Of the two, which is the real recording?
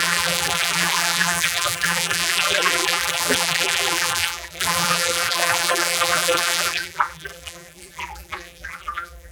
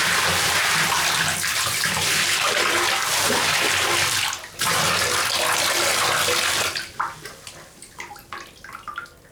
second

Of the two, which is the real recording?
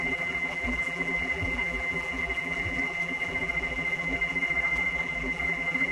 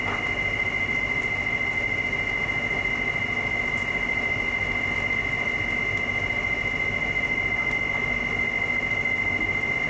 second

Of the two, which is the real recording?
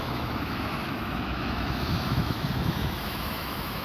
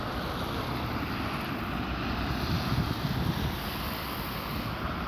second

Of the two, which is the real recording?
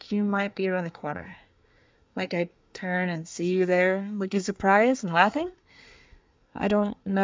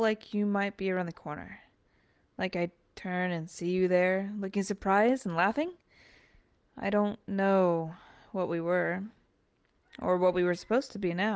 second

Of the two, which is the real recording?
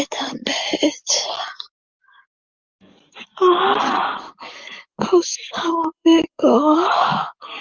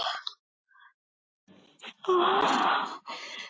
second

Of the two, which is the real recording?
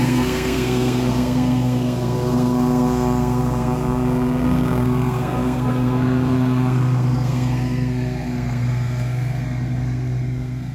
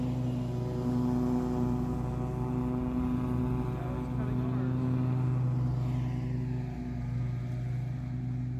second